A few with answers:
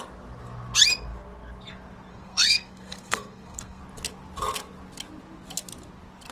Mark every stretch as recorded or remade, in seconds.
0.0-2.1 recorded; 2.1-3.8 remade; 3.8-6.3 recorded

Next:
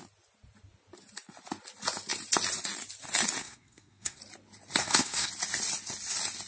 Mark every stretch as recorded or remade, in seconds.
0.0-3.4 recorded; 3.4-4.2 remade; 4.2-4.8 recorded; 4.8-5.3 remade; 5.3-6.5 recorded

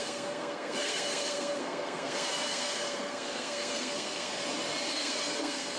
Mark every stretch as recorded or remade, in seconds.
0.0-4.4 remade; 4.4-4.9 recorded; 4.9-5.8 remade

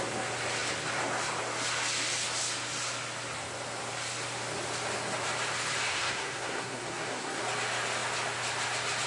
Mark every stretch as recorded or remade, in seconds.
0.0-5.9 recorded; 5.9-7.4 remade; 7.4-9.1 recorded

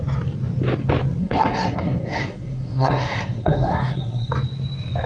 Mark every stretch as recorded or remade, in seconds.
0.0-1.2 recorded; 1.2-4.3 remade; 4.3-5.1 recorded

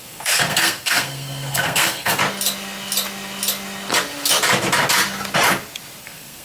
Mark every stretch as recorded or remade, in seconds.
0.0-2.2 remade; 2.2-6.0 recorded; 6.0-6.4 remade

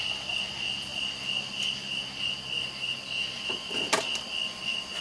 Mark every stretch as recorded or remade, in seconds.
0.0-5.0 recorded